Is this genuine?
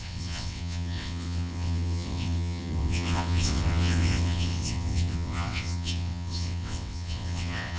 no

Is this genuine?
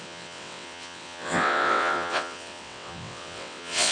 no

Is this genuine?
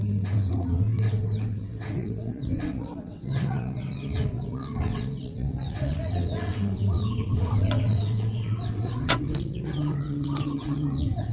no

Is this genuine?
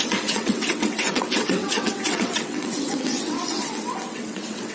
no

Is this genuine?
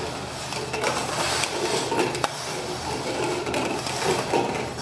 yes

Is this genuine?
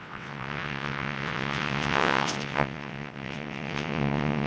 no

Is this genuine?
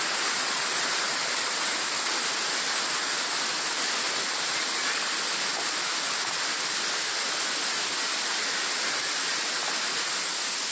yes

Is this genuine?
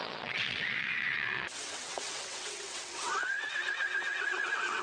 no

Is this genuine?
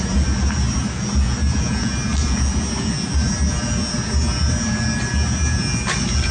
yes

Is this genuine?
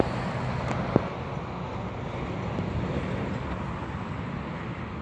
yes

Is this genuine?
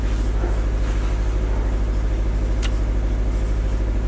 yes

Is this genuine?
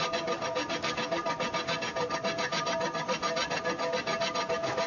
yes